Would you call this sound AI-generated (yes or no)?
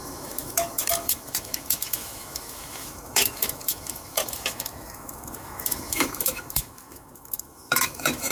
yes